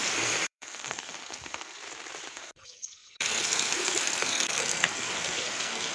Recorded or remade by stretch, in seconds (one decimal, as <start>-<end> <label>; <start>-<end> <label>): 0.0-1.8 remade; 1.8-2.3 recorded; 2.3-5.9 remade